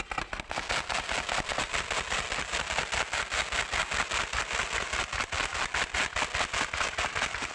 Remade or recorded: recorded